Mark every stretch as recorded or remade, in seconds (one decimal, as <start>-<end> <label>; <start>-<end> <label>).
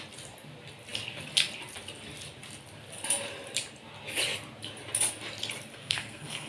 0.0-5.7 recorded; 5.7-6.5 remade